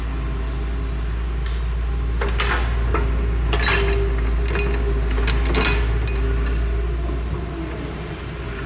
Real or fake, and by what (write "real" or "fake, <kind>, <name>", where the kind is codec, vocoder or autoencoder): real